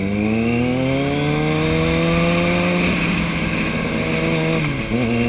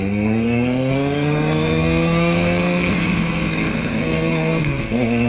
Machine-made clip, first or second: second